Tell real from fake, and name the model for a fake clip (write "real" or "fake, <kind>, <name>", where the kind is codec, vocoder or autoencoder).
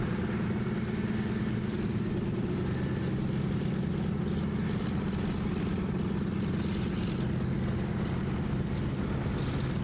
real